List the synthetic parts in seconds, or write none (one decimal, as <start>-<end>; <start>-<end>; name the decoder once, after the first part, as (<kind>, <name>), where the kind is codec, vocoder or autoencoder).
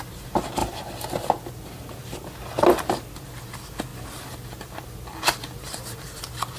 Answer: 3.9-6.6 (vocoder, BigVGAN v2)